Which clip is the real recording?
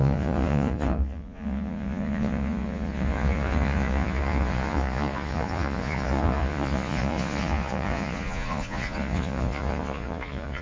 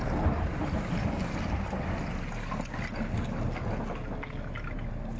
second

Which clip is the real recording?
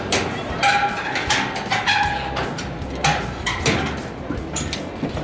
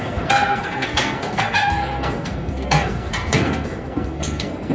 first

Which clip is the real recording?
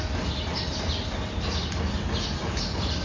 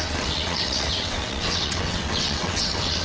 first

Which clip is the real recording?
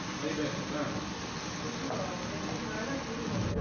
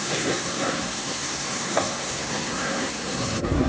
first